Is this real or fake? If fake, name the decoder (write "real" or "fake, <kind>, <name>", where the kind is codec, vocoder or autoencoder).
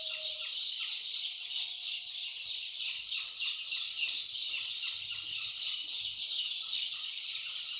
fake, vocoder, BigVGAN v2